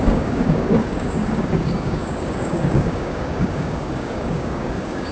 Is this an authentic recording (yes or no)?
no